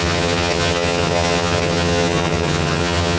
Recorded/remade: remade